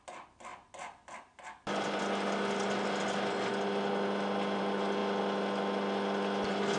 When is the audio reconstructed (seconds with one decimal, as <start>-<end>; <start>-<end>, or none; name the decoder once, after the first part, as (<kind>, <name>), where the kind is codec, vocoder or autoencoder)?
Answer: none